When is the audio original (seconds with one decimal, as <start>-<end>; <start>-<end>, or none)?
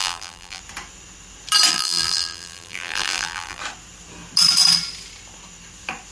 0.6-1.7; 3.6-6.1